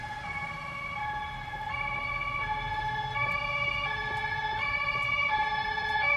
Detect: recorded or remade recorded